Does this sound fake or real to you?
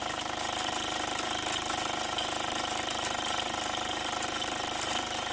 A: real